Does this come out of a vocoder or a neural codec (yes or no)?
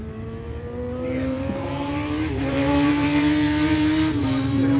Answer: yes